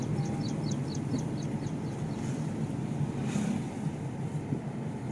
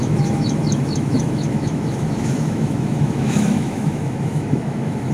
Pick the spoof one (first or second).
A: second